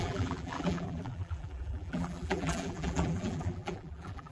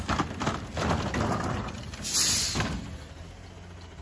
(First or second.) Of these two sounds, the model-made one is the first